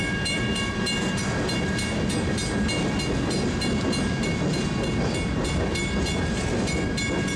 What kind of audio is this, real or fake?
real